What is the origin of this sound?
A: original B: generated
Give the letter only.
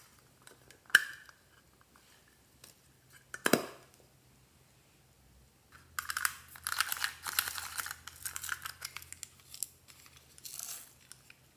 A